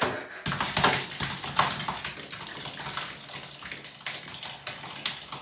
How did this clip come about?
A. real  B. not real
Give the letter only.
A